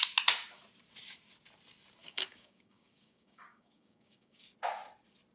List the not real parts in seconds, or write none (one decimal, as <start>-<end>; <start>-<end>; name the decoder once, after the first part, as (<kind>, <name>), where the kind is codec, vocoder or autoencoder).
2.0-4.4 (codec, DAC)

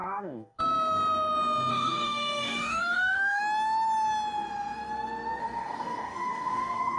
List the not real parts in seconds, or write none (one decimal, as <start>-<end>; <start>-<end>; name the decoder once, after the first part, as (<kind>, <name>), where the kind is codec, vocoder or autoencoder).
0.0-0.6 (codec, DAC); 1.7-3.4; 5.4-7.0

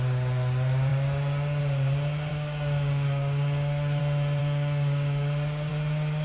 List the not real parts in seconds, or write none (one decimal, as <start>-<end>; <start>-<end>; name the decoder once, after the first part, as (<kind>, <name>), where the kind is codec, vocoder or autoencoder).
2.3-4.0 (codec, DAC); 4.4-5.7